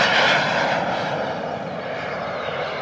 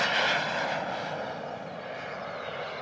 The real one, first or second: second